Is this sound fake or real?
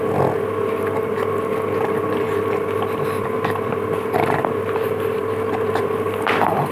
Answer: real